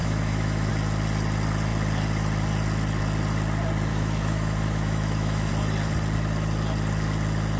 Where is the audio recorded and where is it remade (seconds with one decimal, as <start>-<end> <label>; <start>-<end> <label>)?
0.0-0.7 remade; 0.7-3.9 recorded; 3.9-5.5 remade; 5.5-7.6 recorded